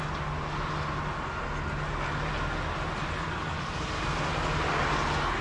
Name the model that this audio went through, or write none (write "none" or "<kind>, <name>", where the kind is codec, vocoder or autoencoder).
none